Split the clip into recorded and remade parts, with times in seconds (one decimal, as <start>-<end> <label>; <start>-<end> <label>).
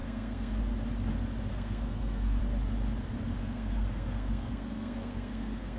0.0-0.6 remade; 0.6-1.5 recorded; 1.5-2.4 remade; 2.4-3.4 recorded; 3.4-5.8 remade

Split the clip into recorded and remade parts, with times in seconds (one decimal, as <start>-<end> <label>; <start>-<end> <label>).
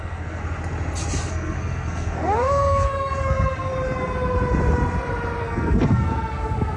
0.0-0.4 remade; 0.4-1.3 recorded; 1.3-3.7 remade; 3.7-5.4 recorded; 5.4-6.8 remade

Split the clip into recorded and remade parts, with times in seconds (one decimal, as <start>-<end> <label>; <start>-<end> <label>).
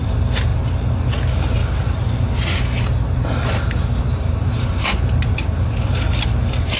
0.0-6.8 recorded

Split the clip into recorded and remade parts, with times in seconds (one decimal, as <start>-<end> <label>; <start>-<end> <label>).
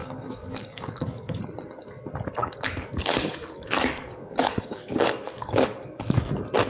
0.0-1.4 remade; 1.4-2.4 recorded; 2.4-6.3 remade; 6.3-6.7 recorded